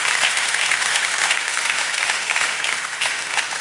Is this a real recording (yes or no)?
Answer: no